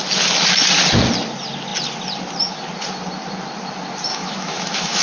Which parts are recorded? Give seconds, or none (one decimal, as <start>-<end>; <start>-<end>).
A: 0.0-4.1